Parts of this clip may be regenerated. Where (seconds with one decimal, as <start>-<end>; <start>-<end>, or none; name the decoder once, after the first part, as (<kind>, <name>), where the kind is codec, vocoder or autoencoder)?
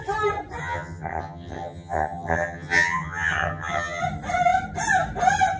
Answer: 0.6-4.0 (vocoder, HiFi-GAN)